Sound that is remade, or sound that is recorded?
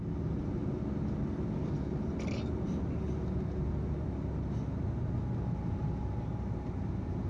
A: recorded